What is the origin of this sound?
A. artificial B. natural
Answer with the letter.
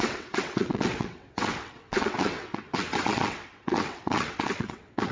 A